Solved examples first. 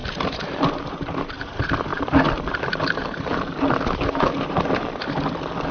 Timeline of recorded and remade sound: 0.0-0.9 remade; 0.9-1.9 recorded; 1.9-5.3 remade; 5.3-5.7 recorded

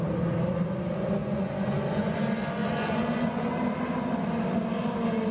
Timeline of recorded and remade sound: 0.0-1.2 recorded; 1.2-2.2 remade; 2.2-2.6 recorded; 2.6-3.5 remade; 3.5-5.3 recorded

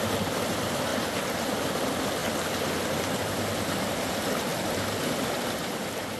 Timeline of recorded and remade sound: 0.0-0.9 remade; 0.9-1.5 recorded; 1.5-2.2 remade; 2.2-4.1 recorded; 4.1-4.5 remade; 4.5-5.0 recorded; 5.0-6.2 remade

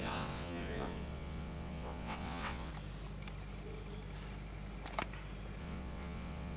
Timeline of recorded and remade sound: 0.0-2.7 remade; 2.7-5.6 recorded; 5.6-6.6 remade

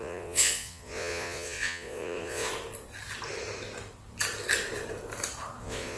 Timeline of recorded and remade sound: 0.0-2.5 remade; 2.5-5.6 recorded; 5.6-6.0 remade